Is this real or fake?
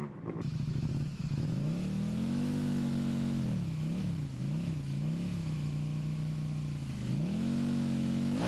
fake